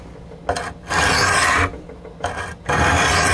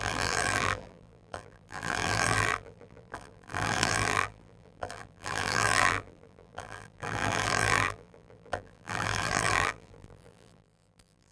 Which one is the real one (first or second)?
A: first